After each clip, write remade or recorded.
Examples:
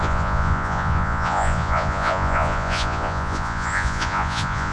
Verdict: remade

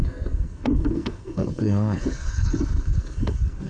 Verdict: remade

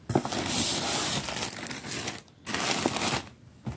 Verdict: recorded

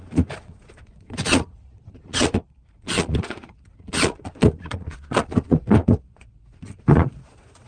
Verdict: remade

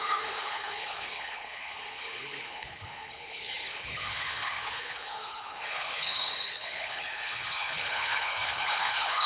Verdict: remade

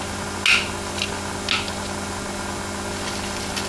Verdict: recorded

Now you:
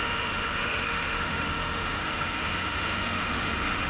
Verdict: remade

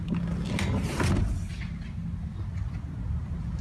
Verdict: recorded